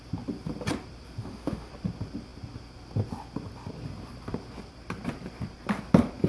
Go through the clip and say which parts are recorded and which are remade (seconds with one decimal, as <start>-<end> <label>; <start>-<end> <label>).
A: 0.0-1.2 recorded; 1.2-1.7 remade; 1.7-6.3 recorded